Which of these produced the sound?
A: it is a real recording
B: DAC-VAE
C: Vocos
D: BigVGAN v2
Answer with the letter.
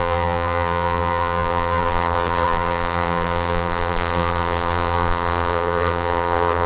D